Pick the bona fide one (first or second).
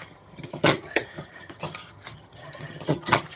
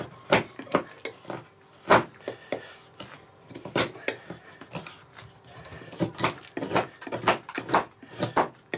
second